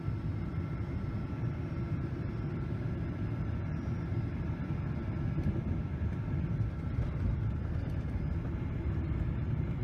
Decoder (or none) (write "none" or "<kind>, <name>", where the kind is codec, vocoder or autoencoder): none